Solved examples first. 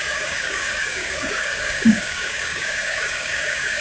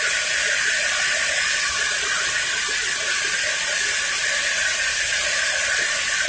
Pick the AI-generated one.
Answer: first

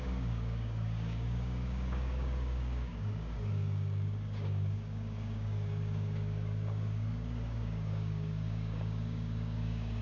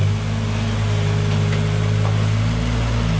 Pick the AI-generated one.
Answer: first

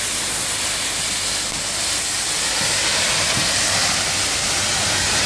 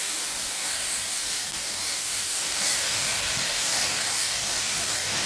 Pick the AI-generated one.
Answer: second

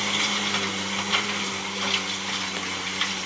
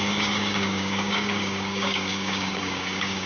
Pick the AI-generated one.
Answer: second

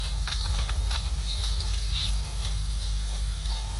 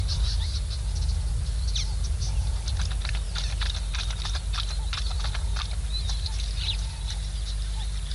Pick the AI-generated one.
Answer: first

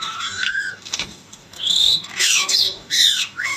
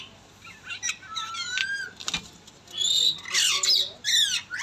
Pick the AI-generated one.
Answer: first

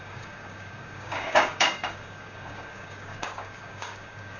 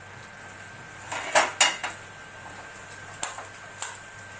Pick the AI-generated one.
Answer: first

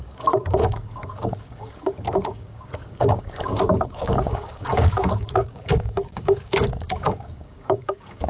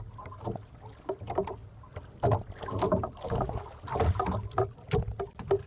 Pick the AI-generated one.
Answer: first